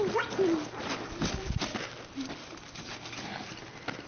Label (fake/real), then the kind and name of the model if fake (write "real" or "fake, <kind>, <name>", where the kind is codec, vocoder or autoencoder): real